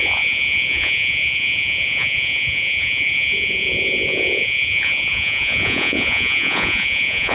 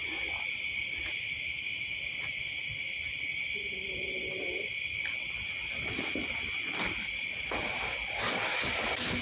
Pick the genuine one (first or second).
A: second